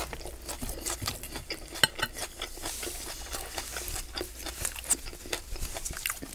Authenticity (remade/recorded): recorded